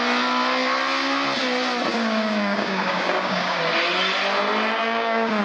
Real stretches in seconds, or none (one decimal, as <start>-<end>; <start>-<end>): 0.0-1.9; 3.6-4.8